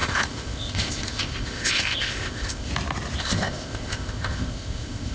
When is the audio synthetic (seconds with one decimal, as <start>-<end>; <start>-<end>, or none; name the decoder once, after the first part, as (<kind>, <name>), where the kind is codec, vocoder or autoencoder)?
0.0-2.7 (codec, ZipCodec); 3.2-5.1